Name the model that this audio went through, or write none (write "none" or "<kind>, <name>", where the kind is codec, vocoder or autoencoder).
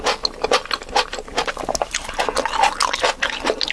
none